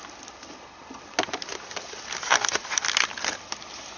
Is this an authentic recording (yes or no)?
yes